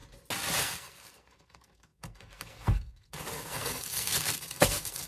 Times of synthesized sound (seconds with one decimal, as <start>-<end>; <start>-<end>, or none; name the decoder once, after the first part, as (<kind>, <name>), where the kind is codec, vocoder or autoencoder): 0.6-5.1 (codec, SNAC)

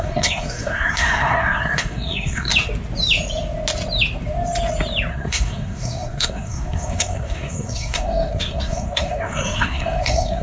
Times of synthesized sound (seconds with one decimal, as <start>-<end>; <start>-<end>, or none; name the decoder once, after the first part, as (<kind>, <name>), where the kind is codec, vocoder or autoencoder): 0.0-2.5 (codec, SNAC); 5.1-10.4

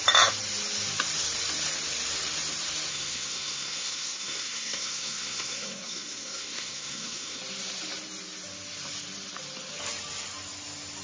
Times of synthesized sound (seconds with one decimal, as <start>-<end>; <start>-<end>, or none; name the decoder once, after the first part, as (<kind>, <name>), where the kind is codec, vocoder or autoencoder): 2.9-7.4 (codec, SNAC)

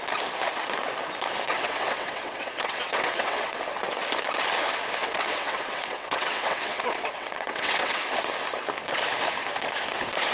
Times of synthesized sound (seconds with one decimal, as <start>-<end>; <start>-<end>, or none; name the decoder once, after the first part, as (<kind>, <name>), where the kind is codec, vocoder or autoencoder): 1.5-3.6 (vocoder, WaveNeXt); 5.0-8.0

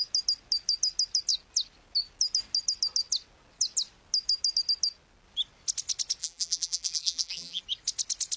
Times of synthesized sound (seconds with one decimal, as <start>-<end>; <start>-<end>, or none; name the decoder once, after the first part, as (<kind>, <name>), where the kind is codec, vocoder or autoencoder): 6.2-7.6 (vocoder, BigVGAN v2)

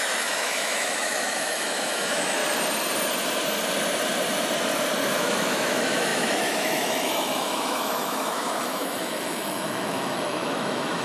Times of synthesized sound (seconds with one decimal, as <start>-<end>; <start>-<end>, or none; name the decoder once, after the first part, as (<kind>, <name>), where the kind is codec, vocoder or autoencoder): 0.0-2.4 (autoencoder, DAC-VAE); 5.2-11.0

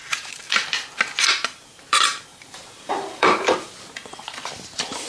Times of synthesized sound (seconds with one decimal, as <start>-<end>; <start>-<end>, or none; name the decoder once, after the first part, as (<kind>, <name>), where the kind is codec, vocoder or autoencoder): 2.3-3.7 (vocoder, BigVGAN v2)